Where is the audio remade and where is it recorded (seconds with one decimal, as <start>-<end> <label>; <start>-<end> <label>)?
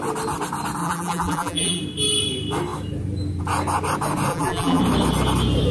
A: 0.0-0.8 recorded; 0.8-1.8 remade; 1.8-4.3 recorded; 4.3-4.8 remade; 4.8-5.7 recorded